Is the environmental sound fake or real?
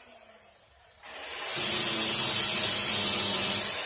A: real